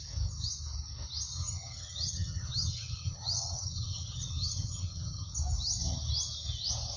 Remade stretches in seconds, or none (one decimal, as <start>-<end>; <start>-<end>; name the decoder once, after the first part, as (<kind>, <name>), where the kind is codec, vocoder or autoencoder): 1.3-5.3 (vocoder, HiFi-GAN)